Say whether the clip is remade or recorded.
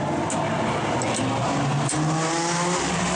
recorded